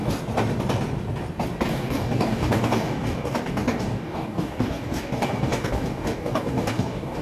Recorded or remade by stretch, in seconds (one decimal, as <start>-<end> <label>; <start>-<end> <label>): 0.0-1.7 recorded; 1.7-7.2 remade